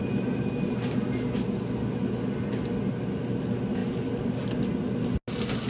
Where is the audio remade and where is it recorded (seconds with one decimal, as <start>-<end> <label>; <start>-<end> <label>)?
0.0-5.7 recorded